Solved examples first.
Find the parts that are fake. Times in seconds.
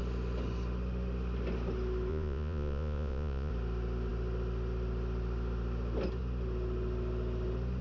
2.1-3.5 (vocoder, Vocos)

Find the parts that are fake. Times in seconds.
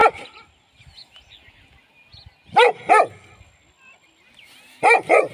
none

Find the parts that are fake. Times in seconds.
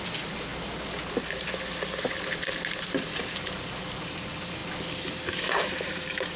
none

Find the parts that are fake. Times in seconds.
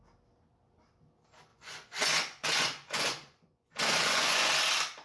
1.5-4.5 (vocoder, Vocos)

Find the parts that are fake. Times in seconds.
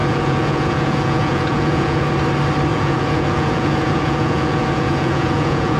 0.0-2.1 (vocoder, Vocos); 2.7-5.8